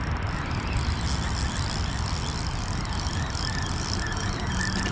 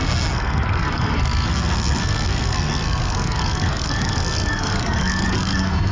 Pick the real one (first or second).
first